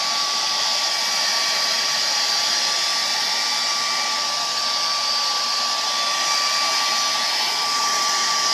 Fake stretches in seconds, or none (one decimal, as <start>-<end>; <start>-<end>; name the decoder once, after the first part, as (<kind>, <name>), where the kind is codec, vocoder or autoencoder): 2.9-3.5 (vocoder, BigVGAN v2)